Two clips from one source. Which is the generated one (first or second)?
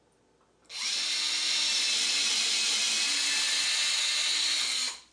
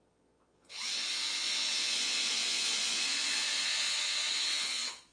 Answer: second